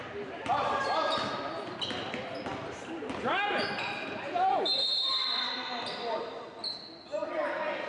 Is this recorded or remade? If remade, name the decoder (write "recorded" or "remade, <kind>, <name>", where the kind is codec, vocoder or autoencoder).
recorded